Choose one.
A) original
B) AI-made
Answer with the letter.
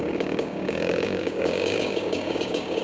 B